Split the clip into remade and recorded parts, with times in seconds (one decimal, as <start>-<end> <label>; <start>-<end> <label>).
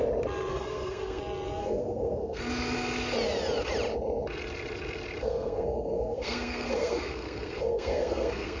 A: 0.0-0.5 recorded; 0.5-1.2 remade; 1.2-1.6 recorded; 1.6-2.4 remade; 2.4-5.2 recorded; 5.2-8.6 remade